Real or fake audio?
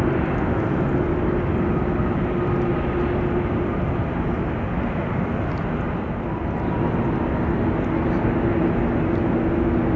real